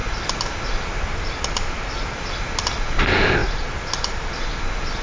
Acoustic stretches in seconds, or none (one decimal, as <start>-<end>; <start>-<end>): 0.0-5.0